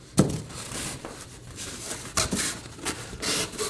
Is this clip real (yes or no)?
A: yes